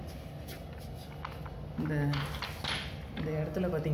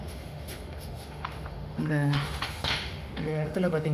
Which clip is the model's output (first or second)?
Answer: second